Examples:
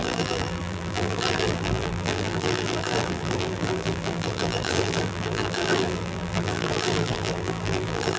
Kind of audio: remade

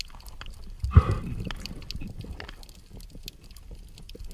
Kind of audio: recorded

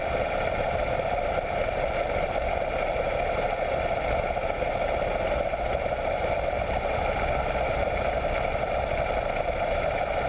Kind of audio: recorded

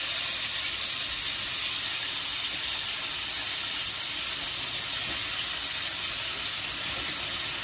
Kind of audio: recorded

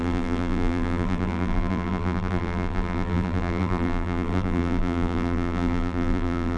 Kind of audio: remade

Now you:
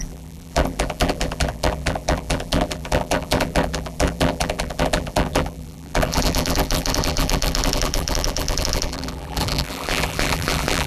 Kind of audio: remade